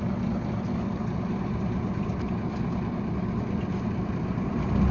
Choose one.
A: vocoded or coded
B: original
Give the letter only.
B